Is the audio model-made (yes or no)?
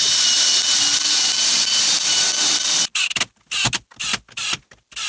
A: no